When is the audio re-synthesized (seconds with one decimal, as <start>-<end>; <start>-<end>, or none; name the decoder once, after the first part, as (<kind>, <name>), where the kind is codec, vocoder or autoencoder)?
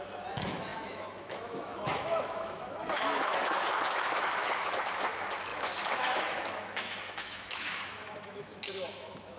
0.0-9.4 (autoencoder, DAC-VAE)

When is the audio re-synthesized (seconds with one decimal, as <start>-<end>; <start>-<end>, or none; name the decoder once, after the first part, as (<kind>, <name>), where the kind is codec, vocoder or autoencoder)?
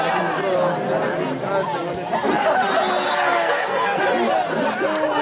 3.1-4.0 (codec, SNAC)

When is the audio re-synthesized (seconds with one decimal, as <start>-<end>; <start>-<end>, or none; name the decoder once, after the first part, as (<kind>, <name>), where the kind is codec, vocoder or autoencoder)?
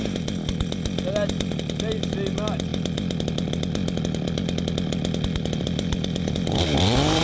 none